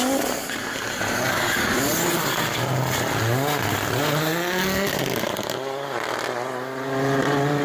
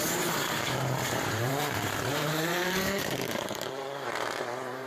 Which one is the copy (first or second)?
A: second